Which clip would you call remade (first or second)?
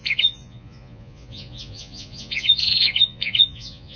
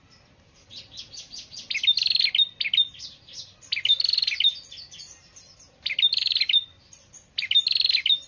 first